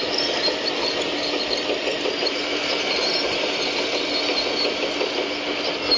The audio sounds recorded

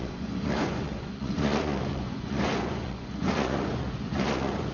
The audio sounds remade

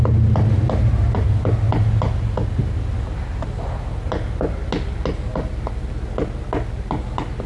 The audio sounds recorded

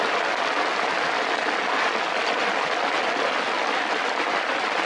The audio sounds recorded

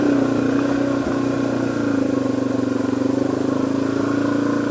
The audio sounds recorded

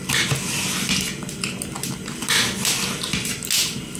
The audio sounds recorded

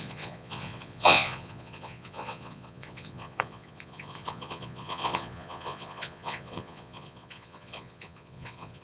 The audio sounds remade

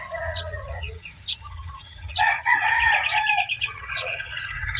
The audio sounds remade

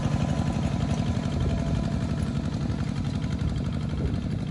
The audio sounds recorded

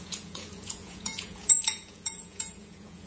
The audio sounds remade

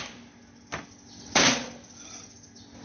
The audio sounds recorded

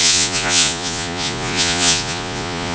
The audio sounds remade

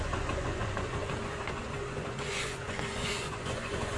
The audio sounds remade